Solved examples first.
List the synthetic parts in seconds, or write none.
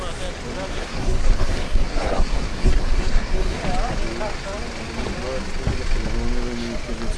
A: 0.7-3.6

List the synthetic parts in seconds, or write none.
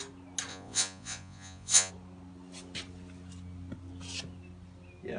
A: 0.5-1.9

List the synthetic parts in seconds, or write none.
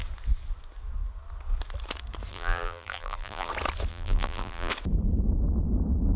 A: 2.3-3.5; 3.9-4.7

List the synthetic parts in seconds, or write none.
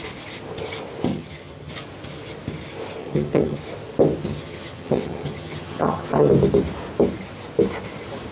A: 1.1-1.7; 3.0-3.6; 4.2-6.3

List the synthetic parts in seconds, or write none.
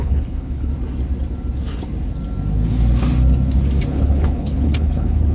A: 0.0-0.7; 3.9-5.3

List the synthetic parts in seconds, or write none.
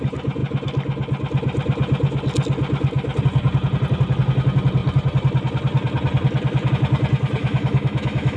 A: 7.4-8.4